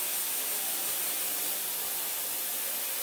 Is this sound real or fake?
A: real